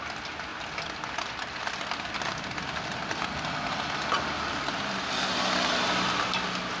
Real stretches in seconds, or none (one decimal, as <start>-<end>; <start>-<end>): 0.0-6.8